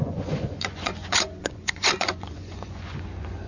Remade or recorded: remade